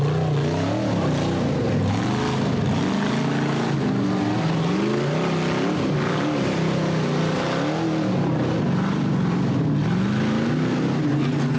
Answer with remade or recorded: recorded